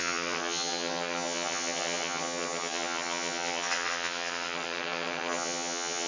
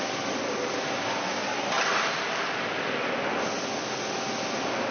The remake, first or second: first